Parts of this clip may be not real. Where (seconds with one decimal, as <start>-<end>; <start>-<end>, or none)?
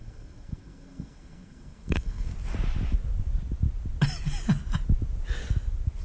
0.0-2.3